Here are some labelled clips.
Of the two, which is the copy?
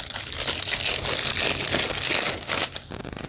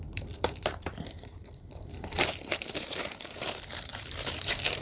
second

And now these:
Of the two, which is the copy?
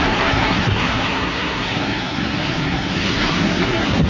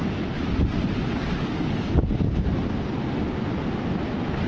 first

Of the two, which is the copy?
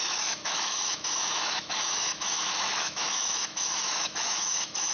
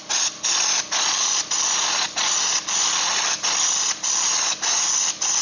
first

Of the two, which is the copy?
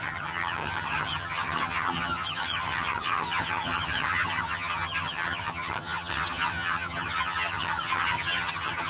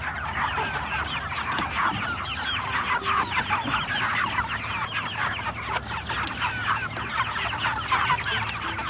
first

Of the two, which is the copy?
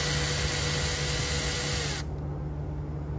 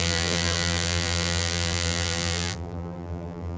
second